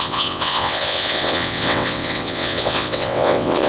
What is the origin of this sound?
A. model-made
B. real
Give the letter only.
A